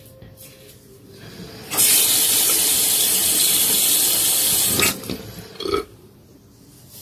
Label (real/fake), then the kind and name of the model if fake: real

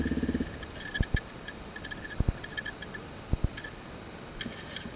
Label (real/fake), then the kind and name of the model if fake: real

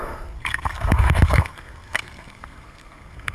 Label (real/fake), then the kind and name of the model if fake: fake, codec, SNAC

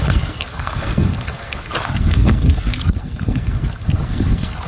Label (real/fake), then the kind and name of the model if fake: fake, codec, SNAC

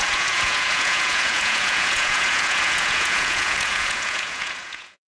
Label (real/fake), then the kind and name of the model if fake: fake, vocoder, Vocos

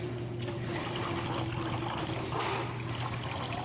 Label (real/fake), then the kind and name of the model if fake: real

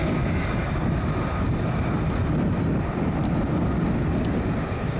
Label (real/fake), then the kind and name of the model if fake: real